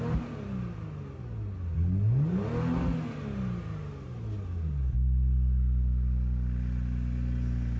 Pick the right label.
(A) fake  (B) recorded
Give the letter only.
B